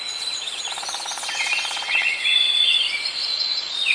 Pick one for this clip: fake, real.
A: fake